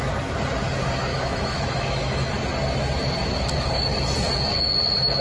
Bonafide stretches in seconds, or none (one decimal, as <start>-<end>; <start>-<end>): 0.0-1.1; 2.3-5.2